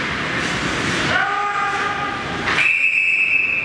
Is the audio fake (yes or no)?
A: no